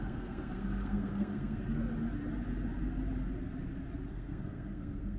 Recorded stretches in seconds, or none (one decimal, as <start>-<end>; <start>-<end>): 1.8-4.1